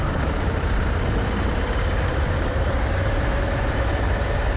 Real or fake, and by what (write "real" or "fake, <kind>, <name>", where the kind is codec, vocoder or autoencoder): fake, vocoder, BigVGAN v2